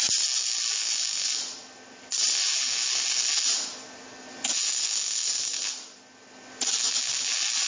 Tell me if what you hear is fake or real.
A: real